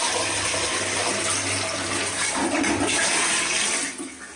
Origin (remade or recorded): recorded